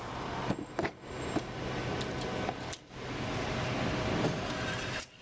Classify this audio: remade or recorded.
recorded